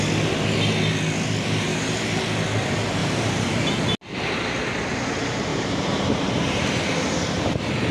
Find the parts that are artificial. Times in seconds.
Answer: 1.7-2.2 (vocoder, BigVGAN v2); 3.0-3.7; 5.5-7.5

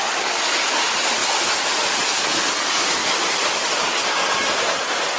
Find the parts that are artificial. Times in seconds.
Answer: 3.0-3.7 (vocoder, BigVGAN v2)

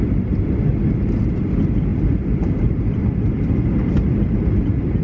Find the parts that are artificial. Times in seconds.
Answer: 0.0-0.7 (vocoder, BigVGAN v2); 1.4-5.0

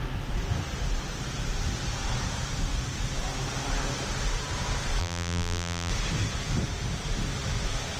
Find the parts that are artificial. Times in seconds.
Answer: 5.0-5.9 (vocoder, BigVGAN v2)

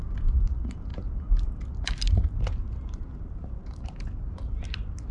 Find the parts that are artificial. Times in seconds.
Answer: 0.9-4.0 (vocoder, BigVGAN v2)

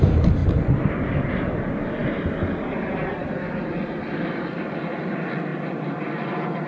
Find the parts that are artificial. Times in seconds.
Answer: 5.5-6.0 (vocoder, BigVGAN v2)